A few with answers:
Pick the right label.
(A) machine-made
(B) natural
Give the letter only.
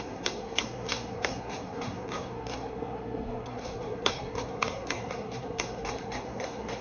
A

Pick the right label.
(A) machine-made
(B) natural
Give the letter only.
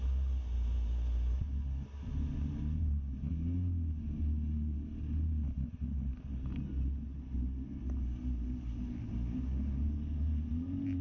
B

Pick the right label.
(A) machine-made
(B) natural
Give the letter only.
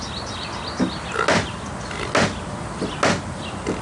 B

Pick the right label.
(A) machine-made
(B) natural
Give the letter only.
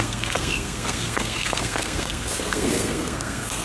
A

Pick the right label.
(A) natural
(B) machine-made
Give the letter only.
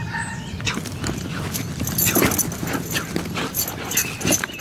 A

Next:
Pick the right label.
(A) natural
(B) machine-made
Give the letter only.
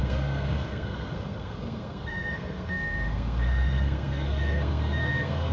B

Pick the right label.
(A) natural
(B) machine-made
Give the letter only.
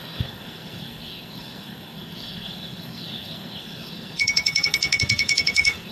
B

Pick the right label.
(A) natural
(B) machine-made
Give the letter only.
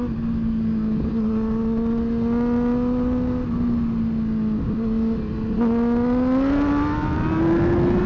A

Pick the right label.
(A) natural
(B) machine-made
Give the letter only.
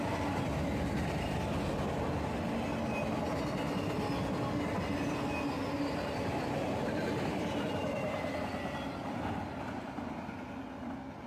A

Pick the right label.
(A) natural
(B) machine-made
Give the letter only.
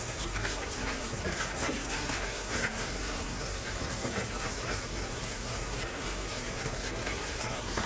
B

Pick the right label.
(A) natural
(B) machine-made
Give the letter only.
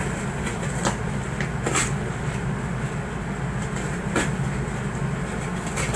A